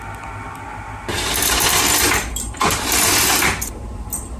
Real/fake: real